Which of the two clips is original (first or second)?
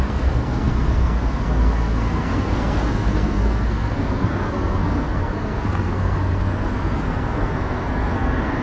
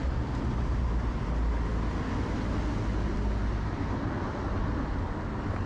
second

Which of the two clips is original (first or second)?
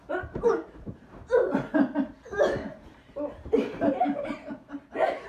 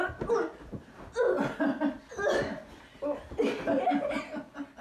second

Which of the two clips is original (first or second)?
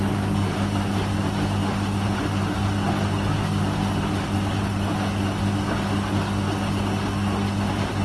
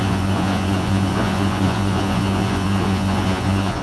first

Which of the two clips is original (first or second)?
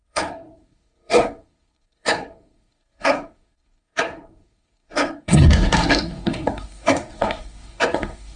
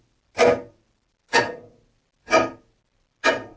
second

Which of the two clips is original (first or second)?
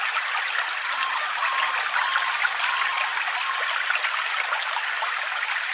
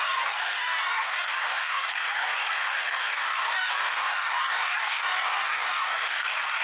first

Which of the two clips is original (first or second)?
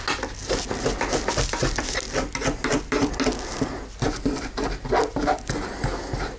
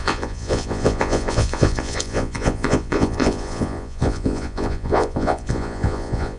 first